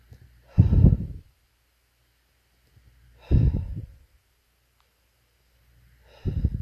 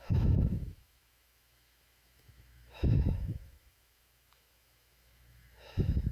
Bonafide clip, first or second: first